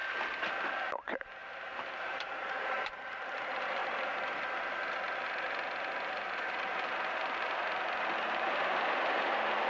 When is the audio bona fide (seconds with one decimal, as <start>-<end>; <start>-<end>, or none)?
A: 0.0-0.5; 3.8-5.2

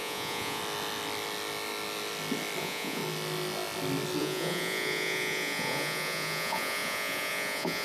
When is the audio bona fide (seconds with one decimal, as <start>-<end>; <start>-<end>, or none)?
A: 0.6-2.6; 3.0-4.2

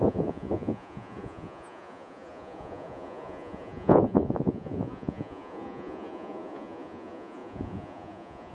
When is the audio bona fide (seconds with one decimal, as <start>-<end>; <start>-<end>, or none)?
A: none